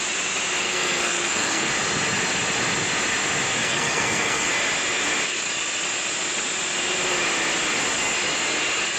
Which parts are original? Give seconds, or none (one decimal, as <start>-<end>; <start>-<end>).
0.0-0.6; 1.7-3.6; 4.5-9.0